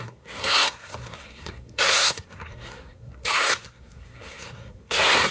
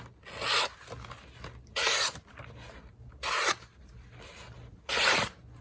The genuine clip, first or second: second